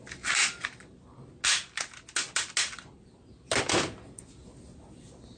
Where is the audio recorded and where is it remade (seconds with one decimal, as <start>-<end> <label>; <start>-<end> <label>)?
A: 0.0-5.4 recorded